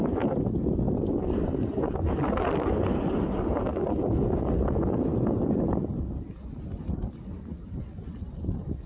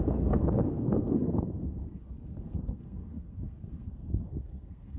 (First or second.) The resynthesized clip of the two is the second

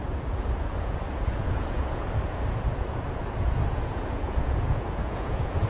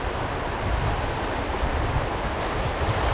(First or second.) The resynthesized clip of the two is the first